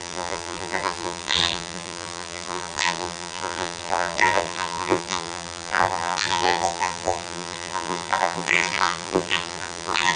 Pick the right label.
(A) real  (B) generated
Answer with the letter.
B